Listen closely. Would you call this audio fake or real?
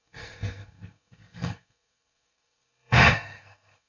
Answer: fake